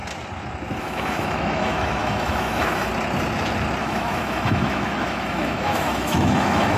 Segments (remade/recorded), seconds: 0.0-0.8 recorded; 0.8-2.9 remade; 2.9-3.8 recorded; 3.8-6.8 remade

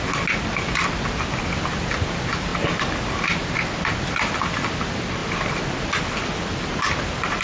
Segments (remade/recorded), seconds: 0.0-7.4 recorded

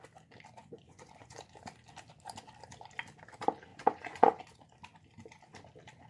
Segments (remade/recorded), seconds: 0.0-0.6 recorded; 0.6-1.4 remade; 1.4-3.7 recorded; 3.7-4.4 remade; 4.4-6.1 recorded

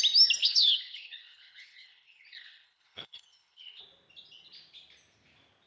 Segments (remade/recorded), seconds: 0.0-0.4 recorded; 0.4-3.8 remade; 3.8-5.7 recorded

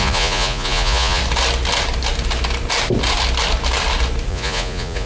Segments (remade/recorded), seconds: 0.0-1.2 remade; 1.2-4.3 recorded; 4.3-5.1 remade

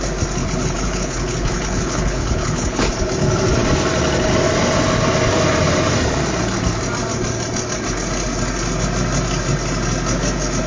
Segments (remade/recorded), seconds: 0.0-0.4 recorded; 0.4-2.9 remade; 2.9-10.7 recorded